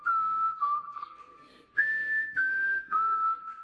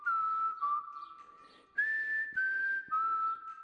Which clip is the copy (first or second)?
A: first